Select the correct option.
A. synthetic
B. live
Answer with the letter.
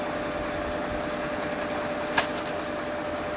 B